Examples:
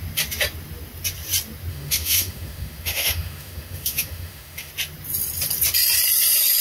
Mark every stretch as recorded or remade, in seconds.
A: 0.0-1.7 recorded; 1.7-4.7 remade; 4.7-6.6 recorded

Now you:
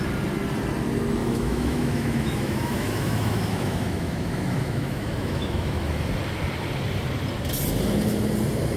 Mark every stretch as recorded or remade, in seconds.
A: 0.0-1.2 recorded; 1.2-6.1 remade; 6.1-8.8 recorded

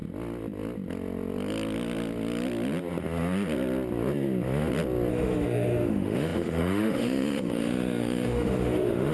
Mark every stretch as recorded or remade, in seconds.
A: 0.0-5.1 recorded; 5.1-9.1 remade

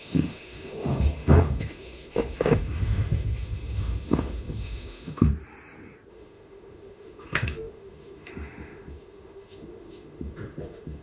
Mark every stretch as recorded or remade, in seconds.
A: 0.0-5.3 remade; 5.3-6.1 recorded; 6.1-11.0 remade

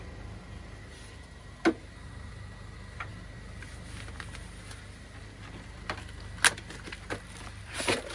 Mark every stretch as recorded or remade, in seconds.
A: 0.0-8.1 recorded

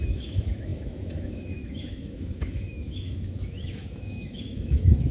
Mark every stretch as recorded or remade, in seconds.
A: 0.0-5.1 remade

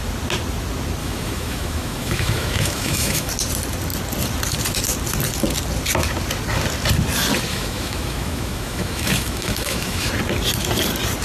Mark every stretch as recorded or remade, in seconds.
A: 0.0-1.0 recorded; 1.0-3.3 remade; 3.3-7.5 recorded; 7.5-10.1 remade; 10.1-11.2 recorded